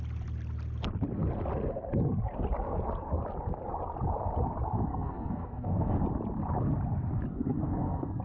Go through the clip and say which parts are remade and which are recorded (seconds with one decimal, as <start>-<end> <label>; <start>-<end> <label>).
0.0-4.9 recorded; 4.9-6.0 remade; 6.0-7.3 recorded; 7.3-8.2 remade